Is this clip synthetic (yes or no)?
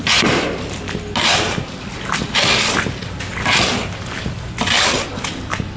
no